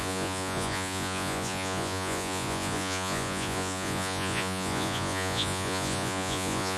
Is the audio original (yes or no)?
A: no